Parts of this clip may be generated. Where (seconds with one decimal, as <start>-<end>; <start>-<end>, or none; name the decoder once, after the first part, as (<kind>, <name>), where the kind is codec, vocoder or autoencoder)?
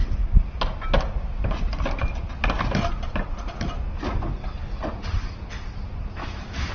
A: 6.2-6.7 (autoencoder, DAC-VAE)